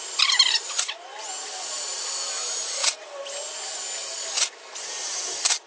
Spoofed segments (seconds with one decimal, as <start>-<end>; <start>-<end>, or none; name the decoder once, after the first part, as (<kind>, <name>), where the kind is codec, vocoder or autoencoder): none